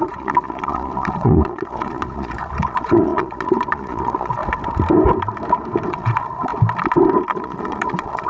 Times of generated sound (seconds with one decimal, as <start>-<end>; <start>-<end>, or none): 0.0-4.4; 5.9-6.5; 7.3-8.3